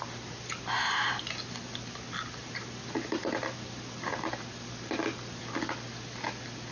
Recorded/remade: recorded